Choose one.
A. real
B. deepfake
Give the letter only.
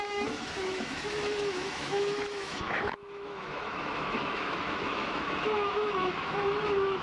B